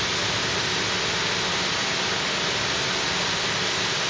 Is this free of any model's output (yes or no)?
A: yes